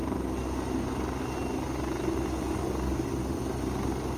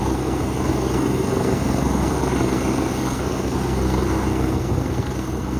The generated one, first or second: second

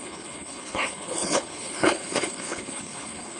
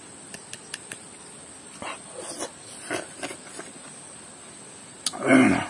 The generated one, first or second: first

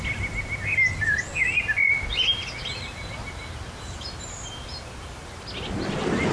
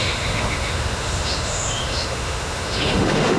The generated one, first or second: second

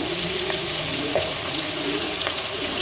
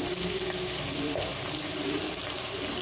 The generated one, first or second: first